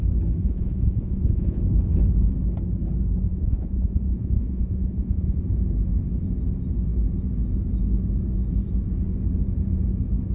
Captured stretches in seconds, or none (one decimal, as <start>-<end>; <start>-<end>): 0.0-0.4; 1.6-3.3; 5.4-10.3